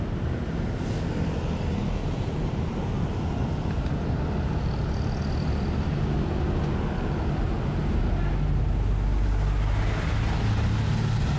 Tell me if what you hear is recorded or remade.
recorded